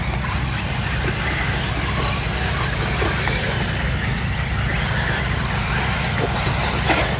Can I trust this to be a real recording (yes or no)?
yes